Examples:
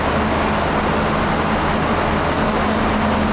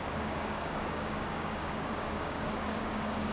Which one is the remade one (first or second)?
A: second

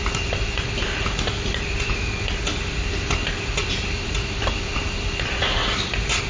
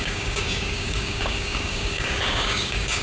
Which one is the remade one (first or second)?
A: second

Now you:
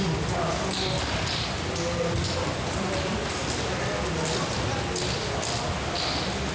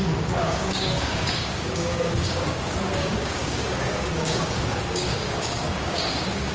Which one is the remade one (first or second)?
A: second